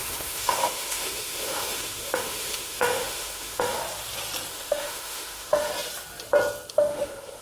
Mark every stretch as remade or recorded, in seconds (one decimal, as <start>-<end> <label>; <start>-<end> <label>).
0.0-3.8 remade; 3.8-4.5 recorded; 4.5-5.7 remade; 5.7-6.7 recorded; 6.7-7.4 remade